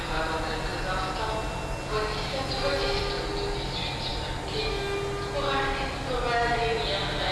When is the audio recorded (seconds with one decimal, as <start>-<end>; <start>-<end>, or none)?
0.0-7.3